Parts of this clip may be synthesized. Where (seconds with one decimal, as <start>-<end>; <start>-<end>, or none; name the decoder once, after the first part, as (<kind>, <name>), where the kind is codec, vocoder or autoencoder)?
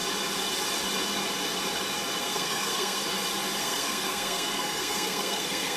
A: 2.2-3.0 (codec, SNAC); 3.6-5.8